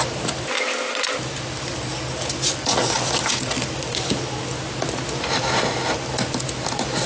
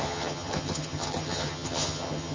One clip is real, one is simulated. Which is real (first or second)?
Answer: first